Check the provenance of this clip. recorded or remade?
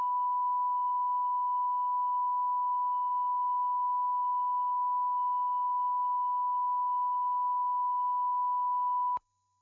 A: remade